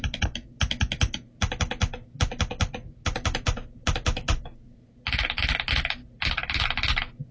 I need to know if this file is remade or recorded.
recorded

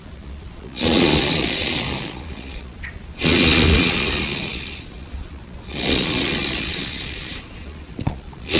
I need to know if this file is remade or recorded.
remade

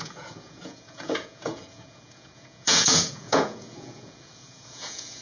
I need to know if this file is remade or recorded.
remade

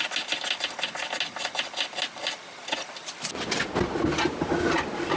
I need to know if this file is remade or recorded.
recorded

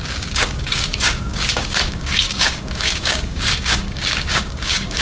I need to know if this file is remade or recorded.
remade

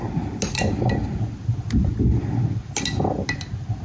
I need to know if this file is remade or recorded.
recorded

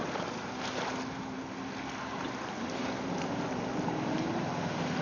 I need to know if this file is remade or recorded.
recorded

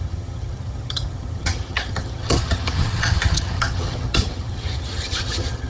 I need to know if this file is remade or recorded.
remade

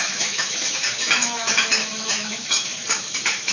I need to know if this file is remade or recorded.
remade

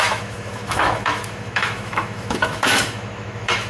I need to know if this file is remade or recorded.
remade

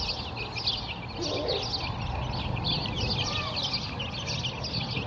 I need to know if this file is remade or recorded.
recorded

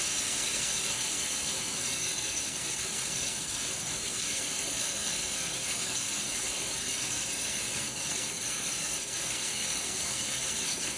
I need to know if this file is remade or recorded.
remade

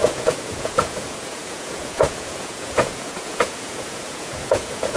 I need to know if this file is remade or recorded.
remade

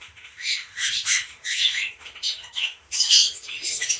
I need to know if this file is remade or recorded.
remade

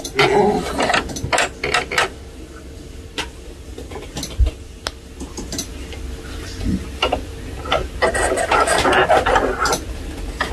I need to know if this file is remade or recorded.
recorded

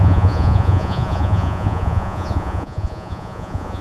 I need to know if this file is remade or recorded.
remade